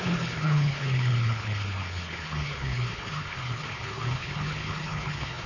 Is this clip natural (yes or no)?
no